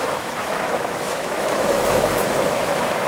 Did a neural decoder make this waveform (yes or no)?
yes